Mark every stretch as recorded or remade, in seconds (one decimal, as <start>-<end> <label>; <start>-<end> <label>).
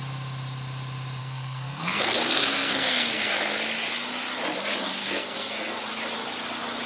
0.0-1.2 recorded; 1.2-3.3 remade; 3.3-5.0 recorded; 5.0-5.8 remade; 5.8-6.9 recorded